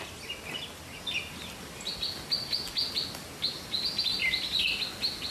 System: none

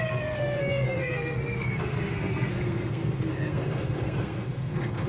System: codec, SNAC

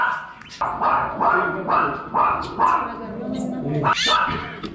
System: none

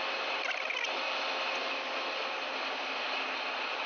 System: none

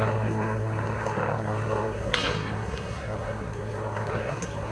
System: codec, SNAC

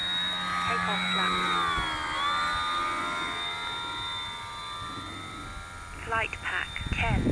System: none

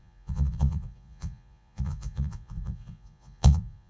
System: vocoder, Vocos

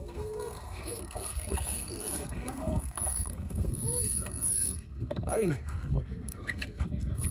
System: codec, SNAC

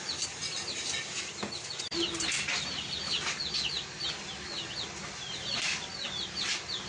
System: none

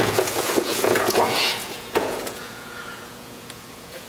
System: vocoder, Vocos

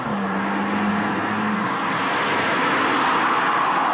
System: none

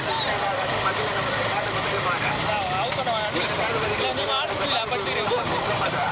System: none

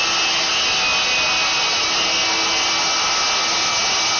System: none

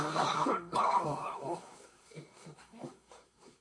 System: codec, SNAC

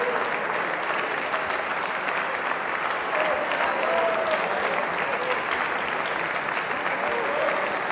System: none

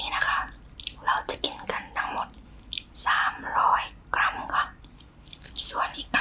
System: none